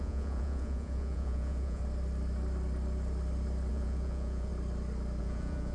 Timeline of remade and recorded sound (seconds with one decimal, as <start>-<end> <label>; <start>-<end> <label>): 0.0-1.8 remade; 1.8-3.7 recorded; 3.7-4.5 remade; 4.5-5.2 recorded; 5.2-5.7 remade

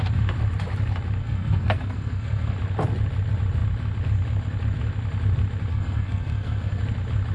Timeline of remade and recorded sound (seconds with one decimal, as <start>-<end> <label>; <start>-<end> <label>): 0.0-1.2 recorded; 1.2-2.5 remade; 2.5-5.7 recorded; 5.7-6.8 remade; 6.8-7.3 recorded

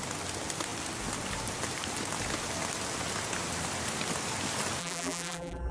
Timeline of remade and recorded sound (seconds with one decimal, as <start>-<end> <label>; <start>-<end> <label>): 0.0-4.8 recorded; 4.8-5.7 remade

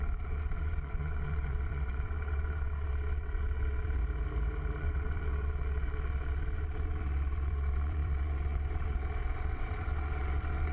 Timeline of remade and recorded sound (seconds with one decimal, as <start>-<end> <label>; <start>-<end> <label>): 0.0-4.0 remade; 4.0-4.8 recorded; 4.8-10.7 remade

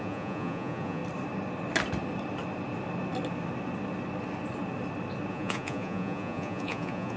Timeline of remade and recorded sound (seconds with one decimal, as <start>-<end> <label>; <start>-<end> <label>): 0.0-1.0 remade; 1.0-5.3 recorded; 5.3-7.2 remade

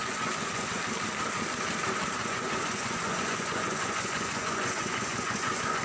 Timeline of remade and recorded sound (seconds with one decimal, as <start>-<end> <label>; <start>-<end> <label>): 0.0-0.8 remade; 0.8-2.2 recorded; 2.2-5.8 remade